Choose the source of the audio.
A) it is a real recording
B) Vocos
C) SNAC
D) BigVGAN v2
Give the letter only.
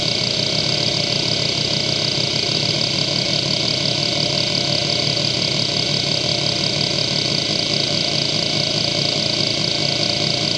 A